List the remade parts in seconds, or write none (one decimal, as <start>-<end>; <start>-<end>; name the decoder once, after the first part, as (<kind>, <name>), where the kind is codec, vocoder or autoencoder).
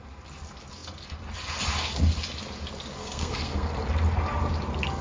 3.0-3.7 (codec, SNAC)